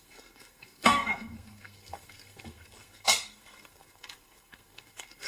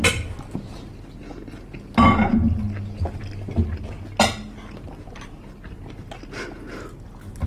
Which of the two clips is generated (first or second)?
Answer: first